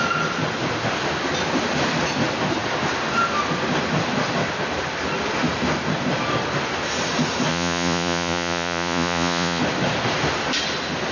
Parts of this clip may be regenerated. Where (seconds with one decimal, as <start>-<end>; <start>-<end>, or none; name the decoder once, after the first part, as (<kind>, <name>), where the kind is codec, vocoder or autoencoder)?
7.5-9.6 (vocoder, Vocos)